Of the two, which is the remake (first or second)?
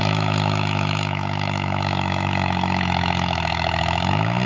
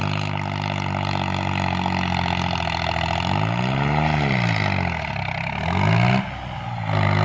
first